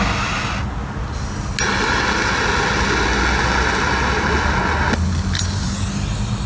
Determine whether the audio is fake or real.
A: real